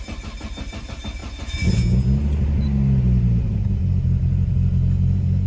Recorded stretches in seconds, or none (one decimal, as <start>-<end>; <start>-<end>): 0.0-5.5